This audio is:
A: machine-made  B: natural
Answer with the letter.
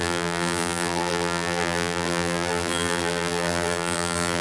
A